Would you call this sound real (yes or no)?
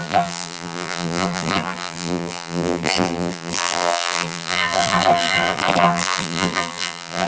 no